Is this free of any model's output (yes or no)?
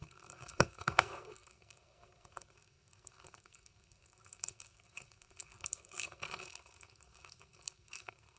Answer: no